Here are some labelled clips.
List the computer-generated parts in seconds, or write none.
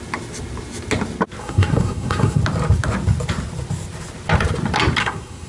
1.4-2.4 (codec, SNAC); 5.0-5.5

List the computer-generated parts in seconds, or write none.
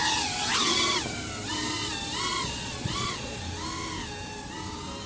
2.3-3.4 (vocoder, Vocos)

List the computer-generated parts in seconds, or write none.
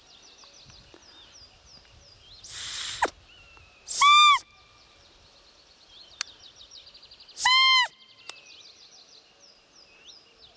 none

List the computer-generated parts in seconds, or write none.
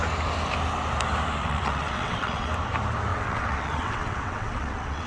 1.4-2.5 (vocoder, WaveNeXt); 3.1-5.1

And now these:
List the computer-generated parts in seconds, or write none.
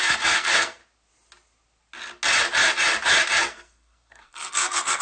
0.0-0.8 (codec, SNAC); 3.4-5.0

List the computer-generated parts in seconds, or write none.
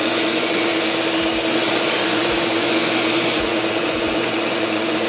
0.0-0.7 (vocoder, Vocos); 1.5-5.1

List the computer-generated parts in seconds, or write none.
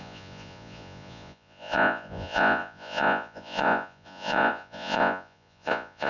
0.0-6.1 (vocoder, Vocos)